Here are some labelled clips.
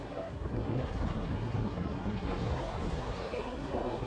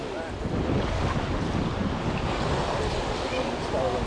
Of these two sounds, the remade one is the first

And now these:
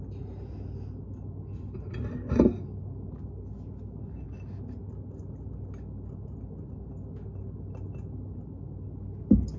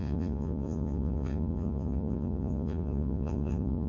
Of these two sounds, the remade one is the second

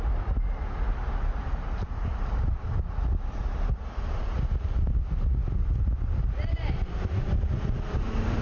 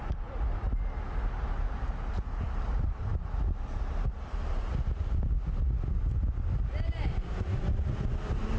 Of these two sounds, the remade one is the first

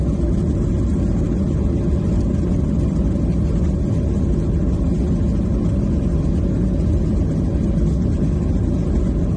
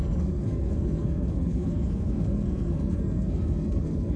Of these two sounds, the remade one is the second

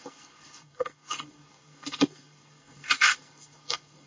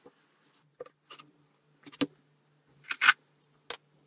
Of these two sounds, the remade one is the first